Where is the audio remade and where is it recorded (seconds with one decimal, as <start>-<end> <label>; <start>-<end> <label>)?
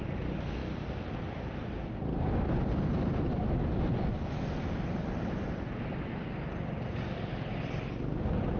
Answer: 0.0-8.6 recorded